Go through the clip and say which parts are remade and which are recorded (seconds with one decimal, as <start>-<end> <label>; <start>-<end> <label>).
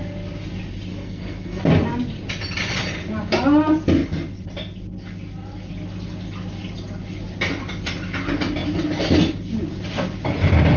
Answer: 0.0-0.9 recorded; 0.9-1.6 remade; 1.6-10.8 recorded